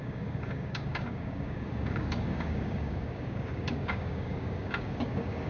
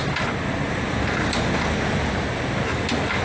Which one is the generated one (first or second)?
first